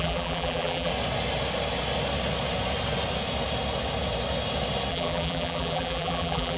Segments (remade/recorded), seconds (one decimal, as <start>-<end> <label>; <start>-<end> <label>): 0.0-0.9 remade; 0.9-4.9 recorded; 4.9-6.6 remade